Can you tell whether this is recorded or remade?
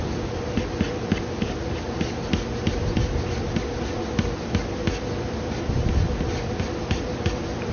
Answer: recorded